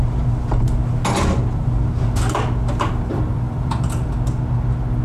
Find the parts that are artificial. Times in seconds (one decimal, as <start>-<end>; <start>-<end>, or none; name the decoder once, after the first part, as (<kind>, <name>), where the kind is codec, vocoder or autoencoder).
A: 3.1-4.1 (vocoder, BigVGAN v2)